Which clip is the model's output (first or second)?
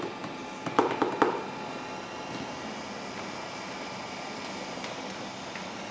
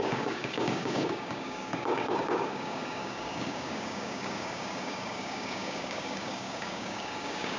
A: second